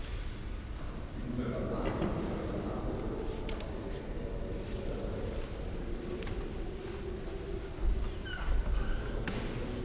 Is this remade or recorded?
recorded